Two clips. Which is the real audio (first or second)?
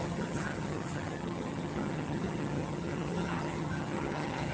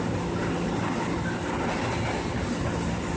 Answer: second